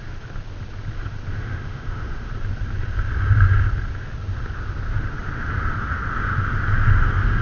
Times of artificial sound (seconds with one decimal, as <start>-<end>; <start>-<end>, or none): 1.3-2.3